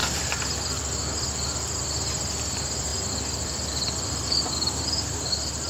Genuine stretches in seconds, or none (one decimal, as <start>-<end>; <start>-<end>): 0.0-2.5